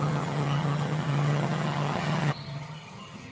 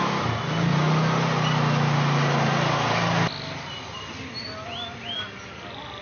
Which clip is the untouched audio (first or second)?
second